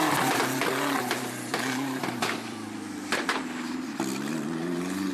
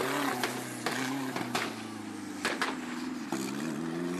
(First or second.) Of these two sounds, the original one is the second